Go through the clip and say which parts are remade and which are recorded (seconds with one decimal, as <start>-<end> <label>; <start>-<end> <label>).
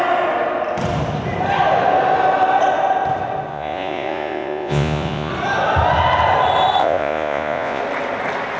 0.0-3.5 recorded; 3.5-5.3 remade; 5.3-6.8 recorded; 6.8-7.8 remade; 7.8-8.6 recorded